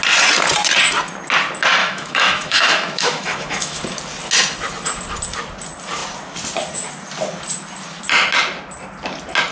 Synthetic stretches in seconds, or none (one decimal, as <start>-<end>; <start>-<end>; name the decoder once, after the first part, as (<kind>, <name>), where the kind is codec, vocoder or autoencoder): 1.8-3.8 (autoencoder, DAC-VAE)